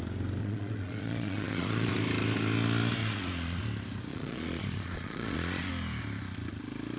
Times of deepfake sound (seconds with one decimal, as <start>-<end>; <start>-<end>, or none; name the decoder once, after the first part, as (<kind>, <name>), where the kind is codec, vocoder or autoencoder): 0.4-1.9 (vocoder, Vocos); 3.0-3.6; 4.1-5.7